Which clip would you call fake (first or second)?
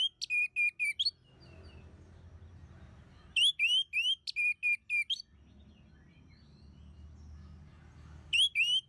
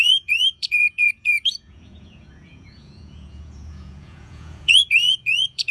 second